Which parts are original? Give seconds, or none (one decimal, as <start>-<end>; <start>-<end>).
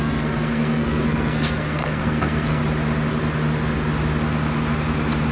2.6-5.3